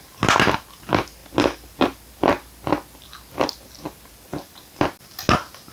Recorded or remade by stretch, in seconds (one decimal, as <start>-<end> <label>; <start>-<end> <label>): 0.0-5.7 recorded